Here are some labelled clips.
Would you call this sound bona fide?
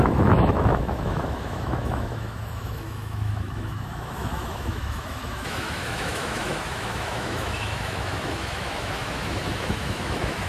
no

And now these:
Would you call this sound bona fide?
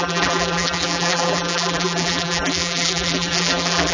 no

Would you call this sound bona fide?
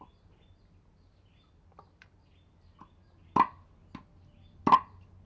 yes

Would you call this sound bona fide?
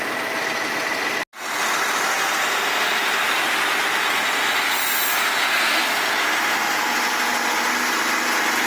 yes